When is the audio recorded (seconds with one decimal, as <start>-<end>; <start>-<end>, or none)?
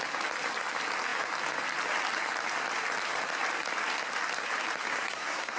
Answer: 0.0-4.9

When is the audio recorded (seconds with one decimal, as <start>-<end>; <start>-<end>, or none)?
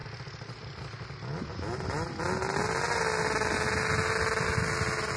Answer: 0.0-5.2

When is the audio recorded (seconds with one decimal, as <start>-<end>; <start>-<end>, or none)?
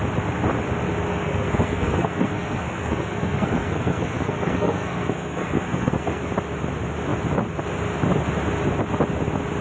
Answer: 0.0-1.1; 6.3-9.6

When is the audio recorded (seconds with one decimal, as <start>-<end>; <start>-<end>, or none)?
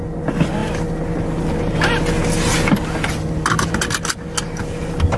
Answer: 0.0-5.2